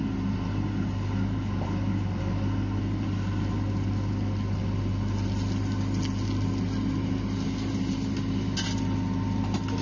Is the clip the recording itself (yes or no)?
yes